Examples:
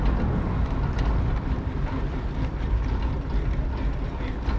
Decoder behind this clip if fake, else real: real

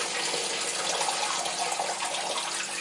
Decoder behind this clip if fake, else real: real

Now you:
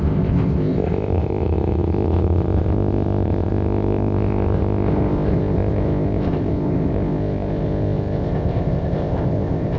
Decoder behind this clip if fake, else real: fake, codec, ZipCodec